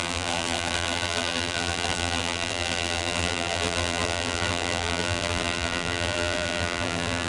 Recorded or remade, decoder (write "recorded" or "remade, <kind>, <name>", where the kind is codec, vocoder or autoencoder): remade, vocoder, BigVGAN v2